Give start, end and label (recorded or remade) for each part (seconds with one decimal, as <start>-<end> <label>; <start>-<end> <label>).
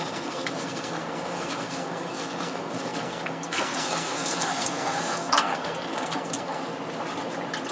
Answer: 0.0-6.6 remade; 6.6-7.7 recorded